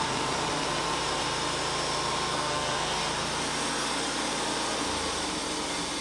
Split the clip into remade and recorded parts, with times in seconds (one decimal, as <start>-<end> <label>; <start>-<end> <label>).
0.0-2.3 recorded; 2.3-3.0 remade; 3.0-6.0 recorded